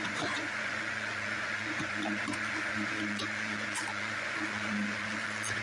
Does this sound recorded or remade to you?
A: remade